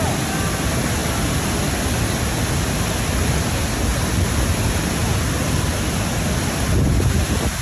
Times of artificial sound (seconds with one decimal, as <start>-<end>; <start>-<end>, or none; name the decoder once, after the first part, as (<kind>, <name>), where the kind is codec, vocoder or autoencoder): none